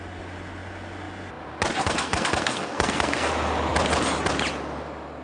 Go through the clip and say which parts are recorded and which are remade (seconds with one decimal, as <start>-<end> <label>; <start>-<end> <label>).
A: 0.0-1.8 recorded; 1.8-3.3 remade; 3.3-5.2 recorded